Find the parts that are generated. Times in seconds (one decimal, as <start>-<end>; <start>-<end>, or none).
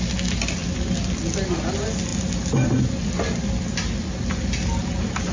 0.6-1.3